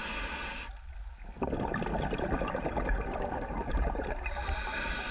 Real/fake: real